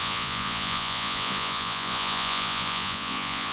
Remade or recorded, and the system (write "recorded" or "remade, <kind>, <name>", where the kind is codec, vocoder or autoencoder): remade, vocoder, Vocos